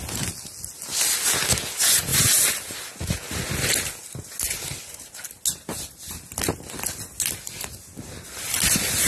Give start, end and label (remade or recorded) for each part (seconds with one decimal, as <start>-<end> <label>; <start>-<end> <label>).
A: 0.0-9.1 recorded